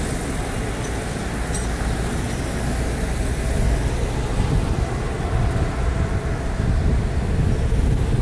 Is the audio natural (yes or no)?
yes